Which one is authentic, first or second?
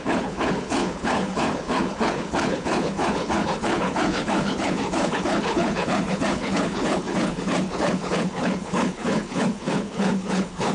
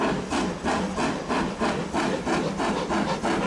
second